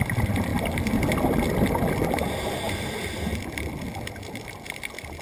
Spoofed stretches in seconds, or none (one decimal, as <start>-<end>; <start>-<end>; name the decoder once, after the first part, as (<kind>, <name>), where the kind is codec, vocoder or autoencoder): none

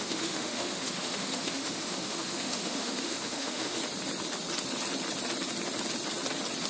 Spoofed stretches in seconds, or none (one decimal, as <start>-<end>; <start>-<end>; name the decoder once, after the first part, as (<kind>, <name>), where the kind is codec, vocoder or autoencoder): 0.0-3.8 (autoencoder, DAC-VAE)